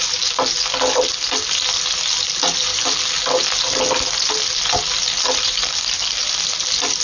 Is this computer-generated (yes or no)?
no